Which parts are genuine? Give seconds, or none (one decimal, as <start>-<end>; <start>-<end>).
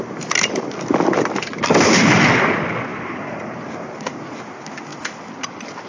0.0-2.9; 4.2-5.9